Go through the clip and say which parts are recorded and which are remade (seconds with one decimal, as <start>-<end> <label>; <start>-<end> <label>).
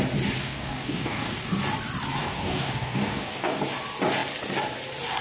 0.0-0.4 recorded; 0.4-1.5 remade; 1.5-2.2 recorded; 2.2-3.6 remade; 3.6-5.2 recorded